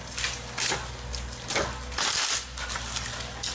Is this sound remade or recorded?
recorded